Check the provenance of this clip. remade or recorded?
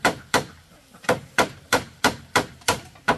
remade